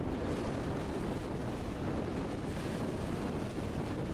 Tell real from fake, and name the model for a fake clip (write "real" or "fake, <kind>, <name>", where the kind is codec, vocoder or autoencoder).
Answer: real